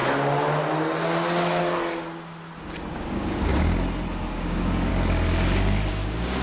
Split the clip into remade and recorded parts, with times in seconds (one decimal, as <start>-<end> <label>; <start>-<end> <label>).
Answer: 0.0-2.9 recorded; 2.9-3.5 remade; 3.5-4.2 recorded; 4.2-4.9 remade; 4.9-5.9 recorded; 5.9-6.4 remade